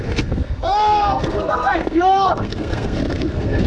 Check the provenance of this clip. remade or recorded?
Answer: remade